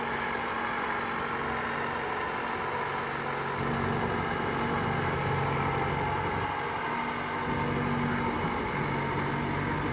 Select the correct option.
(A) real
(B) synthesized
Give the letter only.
A